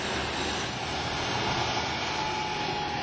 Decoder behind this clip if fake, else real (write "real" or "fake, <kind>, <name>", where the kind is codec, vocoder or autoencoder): real